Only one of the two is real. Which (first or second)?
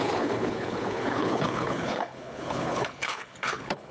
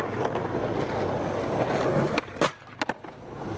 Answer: second